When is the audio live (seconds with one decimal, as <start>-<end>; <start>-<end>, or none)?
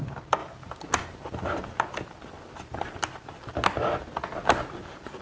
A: 0.0-5.2